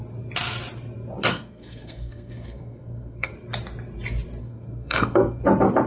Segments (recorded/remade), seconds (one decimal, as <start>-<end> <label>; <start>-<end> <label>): 0.0-1.3 recorded; 1.3-3.3 remade; 3.3-4.4 recorded; 4.4-5.4 remade; 5.4-5.9 recorded